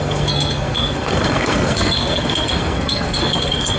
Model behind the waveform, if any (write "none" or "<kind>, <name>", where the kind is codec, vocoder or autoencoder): codec, SNAC